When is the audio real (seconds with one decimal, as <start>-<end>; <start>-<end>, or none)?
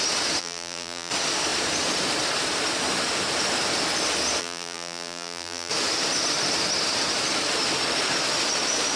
0.0-0.4; 1.1-4.4; 5.7-9.0